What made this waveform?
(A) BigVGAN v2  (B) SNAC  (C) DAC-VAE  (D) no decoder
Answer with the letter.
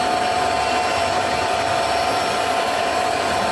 D